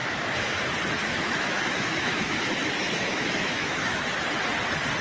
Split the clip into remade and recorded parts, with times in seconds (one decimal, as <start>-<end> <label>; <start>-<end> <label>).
0.0-0.6 remade; 0.6-1.0 recorded; 1.0-4.0 remade; 4.0-5.0 recorded